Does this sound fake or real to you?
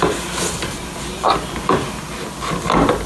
real